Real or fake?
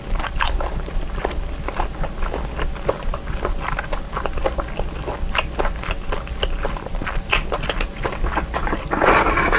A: real